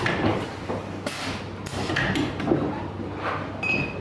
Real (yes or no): yes